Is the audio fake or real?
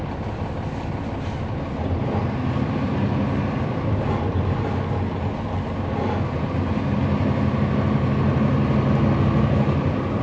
real